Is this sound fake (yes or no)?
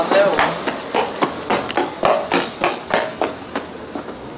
no